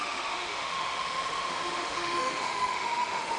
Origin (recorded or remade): remade